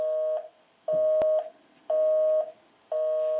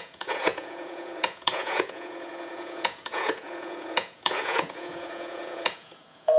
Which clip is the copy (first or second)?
second